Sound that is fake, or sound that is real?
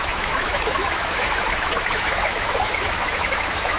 fake